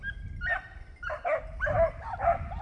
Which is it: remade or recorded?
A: recorded